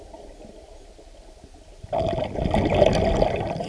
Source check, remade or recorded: recorded